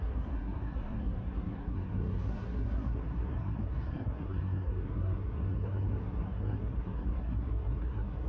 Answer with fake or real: fake